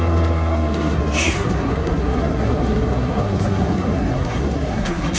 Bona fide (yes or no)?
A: no